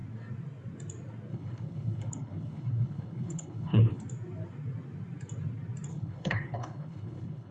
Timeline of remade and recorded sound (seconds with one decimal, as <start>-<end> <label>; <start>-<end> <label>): 0.0-1.3 recorded; 1.3-4.0 remade; 4.0-5.9 recorded; 5.9-7.5 remade